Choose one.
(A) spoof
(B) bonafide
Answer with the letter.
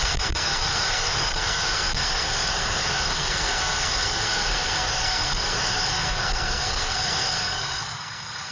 A